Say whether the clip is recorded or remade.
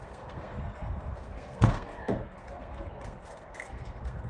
remade